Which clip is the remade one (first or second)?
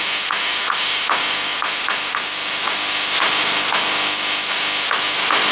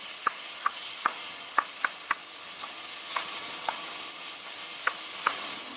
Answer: second